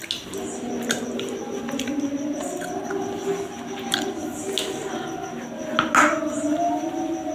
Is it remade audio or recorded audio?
recorded